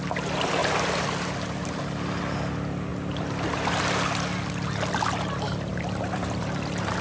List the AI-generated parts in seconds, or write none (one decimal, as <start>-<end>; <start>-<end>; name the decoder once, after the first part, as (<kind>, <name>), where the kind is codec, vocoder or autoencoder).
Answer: 0.6-1.8 (vocoder, BigVGAN v2); 2.9-3.8; 5.7-6.4